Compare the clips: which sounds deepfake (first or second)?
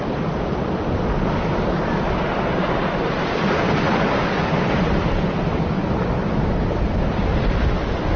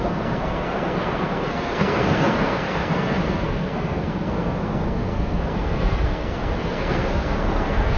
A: second